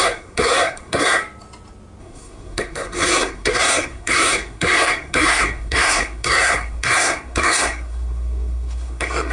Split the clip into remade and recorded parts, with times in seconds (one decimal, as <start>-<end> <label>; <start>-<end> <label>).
0.0-1.2 remade; 1.2-2.0 recorded; 2.0-9.3 remade